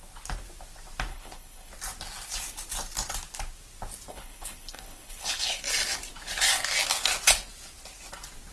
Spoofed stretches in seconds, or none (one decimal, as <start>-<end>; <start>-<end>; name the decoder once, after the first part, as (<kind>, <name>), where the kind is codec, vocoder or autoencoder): 1.1-1.7 (codec, HILCodec); 4.1-5.6